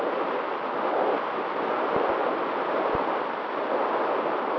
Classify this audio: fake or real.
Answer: real